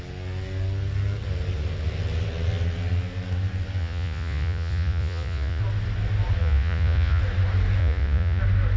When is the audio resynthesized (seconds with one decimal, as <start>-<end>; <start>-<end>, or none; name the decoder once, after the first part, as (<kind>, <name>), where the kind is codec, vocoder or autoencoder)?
3.8-5.6 (vocoder, Vocos); 6.4-7.2; 7.8-8.4